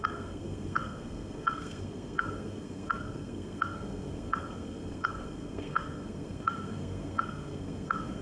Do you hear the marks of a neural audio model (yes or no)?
yes